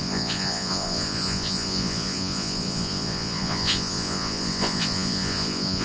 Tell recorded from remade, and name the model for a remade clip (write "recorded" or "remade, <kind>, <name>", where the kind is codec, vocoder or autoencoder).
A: remade, vocoder, Vocos